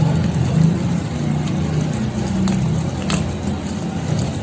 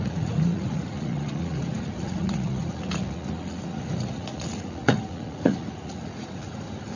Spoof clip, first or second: second